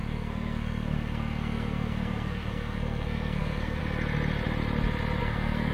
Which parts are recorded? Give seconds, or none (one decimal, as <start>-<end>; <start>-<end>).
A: 3.8-5.2